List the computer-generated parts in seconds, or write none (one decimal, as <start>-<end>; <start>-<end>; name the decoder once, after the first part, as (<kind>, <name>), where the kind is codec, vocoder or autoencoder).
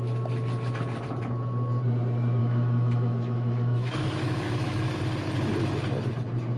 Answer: 2.4-5.0 (autoencoder, DAC-VAE)